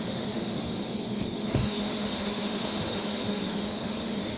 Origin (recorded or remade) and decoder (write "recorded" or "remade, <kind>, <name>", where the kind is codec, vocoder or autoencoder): remade, autoencoder, DAC-VAE